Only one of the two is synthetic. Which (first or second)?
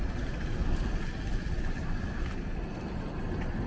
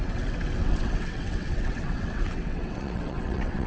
second